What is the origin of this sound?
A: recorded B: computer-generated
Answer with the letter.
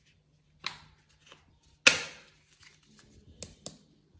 A